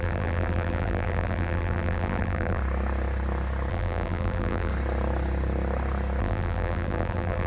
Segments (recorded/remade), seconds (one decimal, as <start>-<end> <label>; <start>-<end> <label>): 0.0-2.6 remade; 2.6-3.7 recorded; 3.7-4.7 remade; 4.7-6.2 recorded; 6.2-7.5 remade

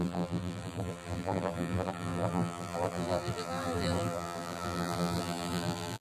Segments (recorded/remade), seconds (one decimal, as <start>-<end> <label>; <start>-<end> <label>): 0.0-6.0 remade

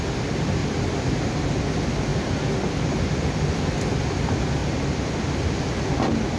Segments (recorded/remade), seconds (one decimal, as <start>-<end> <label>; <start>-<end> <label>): 0.0-4.6 recorded; 4.6-5.2 remade; 5.2-6.4 recorded